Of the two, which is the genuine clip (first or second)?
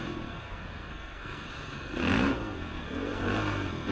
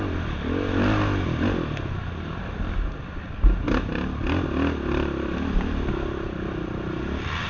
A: second